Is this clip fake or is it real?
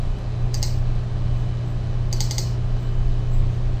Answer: real